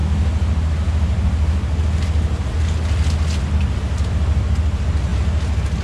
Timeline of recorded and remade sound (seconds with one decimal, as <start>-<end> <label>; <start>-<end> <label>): 0.0-5.8 recorded